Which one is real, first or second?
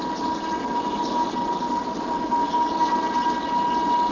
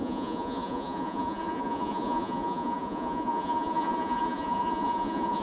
first